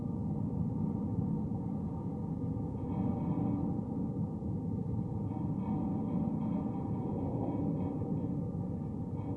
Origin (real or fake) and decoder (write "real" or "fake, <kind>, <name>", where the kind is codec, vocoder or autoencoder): real